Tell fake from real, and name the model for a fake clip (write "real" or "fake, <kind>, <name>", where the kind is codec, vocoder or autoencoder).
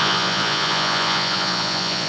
fake, vocoder, Vocos